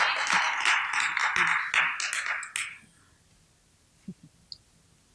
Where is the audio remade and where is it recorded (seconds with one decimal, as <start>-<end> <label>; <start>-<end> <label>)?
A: 0.0-5.1 recorded